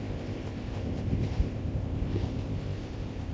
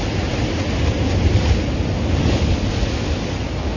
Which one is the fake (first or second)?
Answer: first